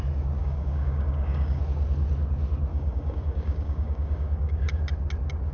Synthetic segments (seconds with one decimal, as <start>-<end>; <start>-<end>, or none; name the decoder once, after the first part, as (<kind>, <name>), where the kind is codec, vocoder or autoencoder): 0.4-1.6 (codec, DAC); 2.7-4.8